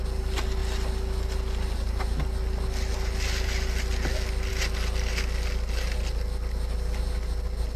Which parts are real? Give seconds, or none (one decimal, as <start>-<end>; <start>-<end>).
0.0-7.8